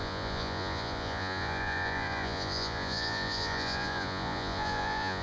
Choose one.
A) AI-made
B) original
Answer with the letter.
A